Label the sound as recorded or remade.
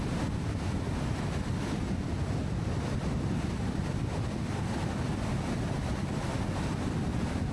recorded